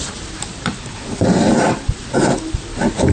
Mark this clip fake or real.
real